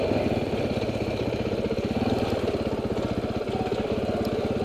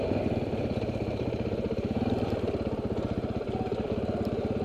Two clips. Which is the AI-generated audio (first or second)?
second